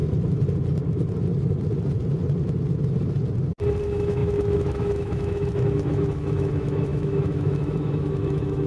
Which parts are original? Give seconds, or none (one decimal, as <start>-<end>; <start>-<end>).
0.0-3.8